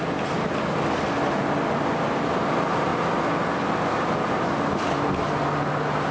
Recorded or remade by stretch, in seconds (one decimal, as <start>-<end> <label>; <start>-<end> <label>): 0.0-6.1 recorded